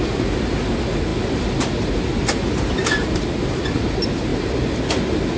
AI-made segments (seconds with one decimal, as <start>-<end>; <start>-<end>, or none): 2.8-3.6